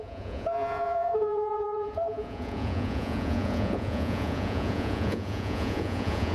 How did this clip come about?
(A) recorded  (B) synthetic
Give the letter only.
B